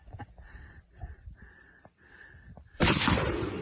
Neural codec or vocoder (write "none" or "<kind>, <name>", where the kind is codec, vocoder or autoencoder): vocoder, BigVGAN v2